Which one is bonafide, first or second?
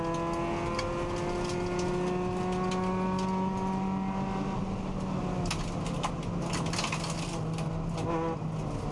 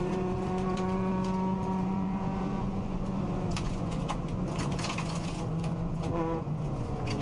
first